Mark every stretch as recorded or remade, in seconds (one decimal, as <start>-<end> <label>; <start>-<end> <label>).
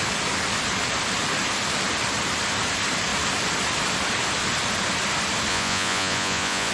0.0-5.5 recorded; 5.5-6.7 remade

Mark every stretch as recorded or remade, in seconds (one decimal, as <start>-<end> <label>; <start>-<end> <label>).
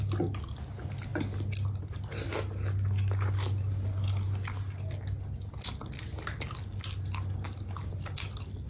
0.0-8.7 recorded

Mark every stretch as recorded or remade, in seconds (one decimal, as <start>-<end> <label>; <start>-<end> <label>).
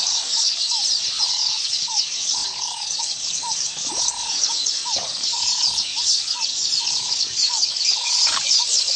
0.0-0.8 remade; 0.8-1.3 recorded; 1.3-9.0 remade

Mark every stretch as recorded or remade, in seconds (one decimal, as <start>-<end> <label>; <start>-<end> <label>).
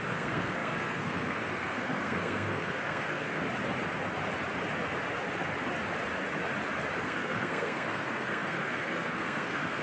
0.0-3.4 remade; 3.4-7.0 recorded; 7.0-9.8 remade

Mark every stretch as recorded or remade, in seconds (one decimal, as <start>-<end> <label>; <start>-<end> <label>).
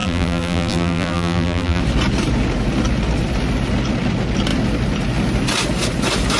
0.0-1.8 remade; 1.8-6.4 recorded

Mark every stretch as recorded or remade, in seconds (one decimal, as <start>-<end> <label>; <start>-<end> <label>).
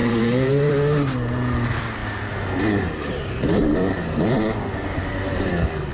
0.0-0.7 remade; 0.7-2.0 recorded; 2.0-5.5 remade; 5.5-5.9 recorded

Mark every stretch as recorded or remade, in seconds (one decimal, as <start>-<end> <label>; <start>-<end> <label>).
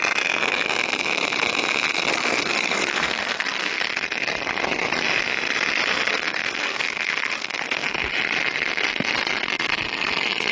0.0-2.1 recorded; 2.1-3.8 remade; 3.8-6.1 recorded; 6.1-8.1 remade; 8.1-10.5 recorded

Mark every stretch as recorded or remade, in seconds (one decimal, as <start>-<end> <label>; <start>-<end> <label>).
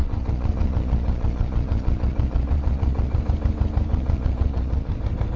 0.0-3.2 remade; 3.2-3.9 recorded; 3.9-4.9 remade; 4.9-5.4 recorded